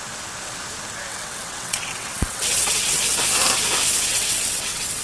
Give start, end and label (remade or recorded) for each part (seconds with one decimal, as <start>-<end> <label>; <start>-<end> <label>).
0.0-1.1 recorded; 1.1-3.0 remade; 3.0-4.1 recorded; 4.1-5.0 remade